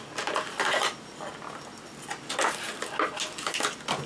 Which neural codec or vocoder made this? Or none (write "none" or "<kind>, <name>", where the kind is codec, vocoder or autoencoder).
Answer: none